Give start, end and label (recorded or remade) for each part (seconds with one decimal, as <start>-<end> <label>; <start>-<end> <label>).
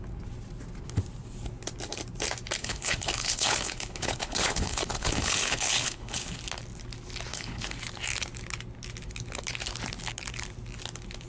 0.0-2.6 recorded; 2.6-6.4 remade; 6.4-7.3 recorded; 7.3-7.8 remade; 7.8-11.3 recorded